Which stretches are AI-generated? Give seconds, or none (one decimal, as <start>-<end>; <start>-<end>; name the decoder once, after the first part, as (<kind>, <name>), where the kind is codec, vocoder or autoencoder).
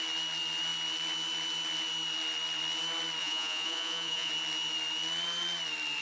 3.2-4.3 (vocoder, Vocos)